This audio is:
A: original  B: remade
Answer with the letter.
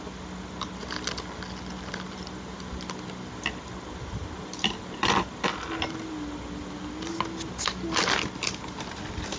A